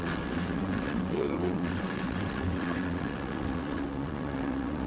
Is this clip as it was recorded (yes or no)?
no